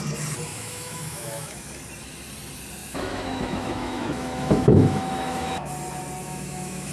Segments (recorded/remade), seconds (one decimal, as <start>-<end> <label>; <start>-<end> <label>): 0.0-0.5 recorded; 0.5-1.7 remade; 1.7-2.8 recorded; 2.8-5.7 remade; 5.7-6.2 recorded; 6.2-6.9 remade